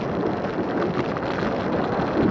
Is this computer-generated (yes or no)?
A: no